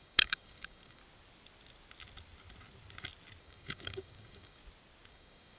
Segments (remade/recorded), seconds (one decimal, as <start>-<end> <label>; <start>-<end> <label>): 0.0-1.0 remade; 1.0-3.4 recorded; 3.4-4.6 remade; 4.6-5.1 recorded; 5.1-5.6 remade